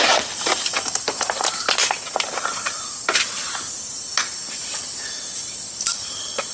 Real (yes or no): yes